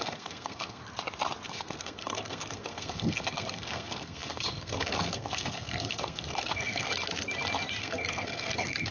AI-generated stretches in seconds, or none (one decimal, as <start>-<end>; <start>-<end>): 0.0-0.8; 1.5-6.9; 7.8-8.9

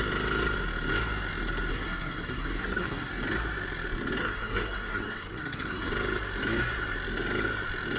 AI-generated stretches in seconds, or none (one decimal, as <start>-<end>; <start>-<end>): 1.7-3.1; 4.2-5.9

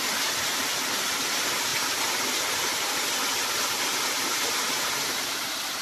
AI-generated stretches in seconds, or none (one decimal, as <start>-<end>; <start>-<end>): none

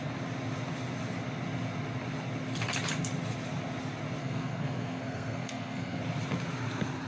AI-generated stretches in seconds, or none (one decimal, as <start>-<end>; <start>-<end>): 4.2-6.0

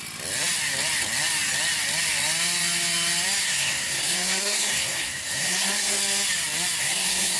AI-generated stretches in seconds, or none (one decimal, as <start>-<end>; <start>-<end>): 3.4-6.0; 6.8-7.4

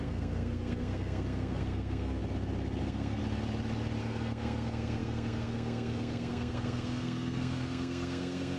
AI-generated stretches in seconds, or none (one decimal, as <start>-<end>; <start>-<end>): 0.0-2.2; 2.8-3.2; 4.0-8.6